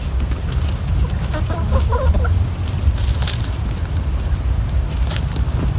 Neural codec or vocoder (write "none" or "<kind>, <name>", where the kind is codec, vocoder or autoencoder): none